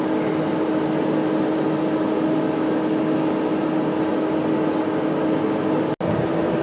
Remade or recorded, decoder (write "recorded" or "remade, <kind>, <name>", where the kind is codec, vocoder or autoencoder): recorded